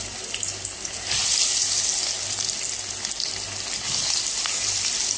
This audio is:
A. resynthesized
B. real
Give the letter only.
B